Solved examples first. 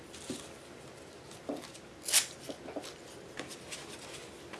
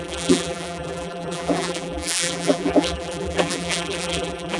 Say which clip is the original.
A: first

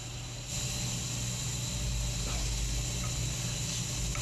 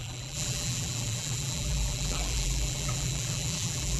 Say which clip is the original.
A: first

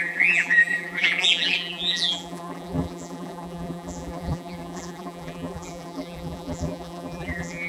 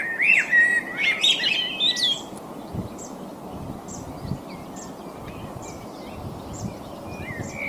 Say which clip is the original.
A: second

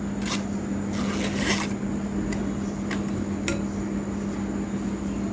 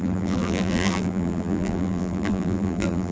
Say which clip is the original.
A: first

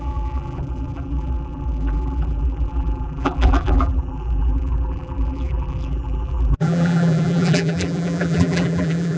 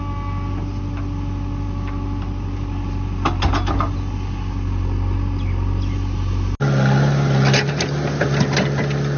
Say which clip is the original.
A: second